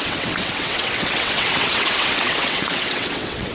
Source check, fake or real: fake